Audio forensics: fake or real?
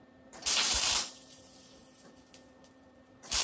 fake